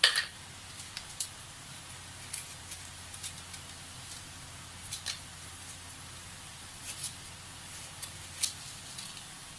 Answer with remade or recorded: recorded